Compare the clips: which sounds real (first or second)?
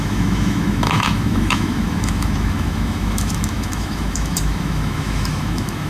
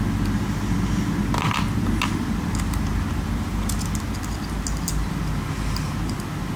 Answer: second